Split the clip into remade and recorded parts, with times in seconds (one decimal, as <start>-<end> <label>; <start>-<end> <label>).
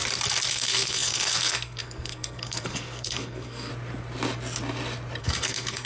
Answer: 0.0-0.5 recorded; 0.5-3.7 remade; 3.7-5.2 recorded; 5.2-5.9 remade